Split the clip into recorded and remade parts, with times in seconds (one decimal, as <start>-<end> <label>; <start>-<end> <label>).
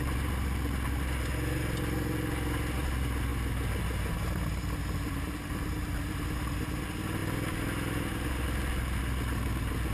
0.0-9.9 recorded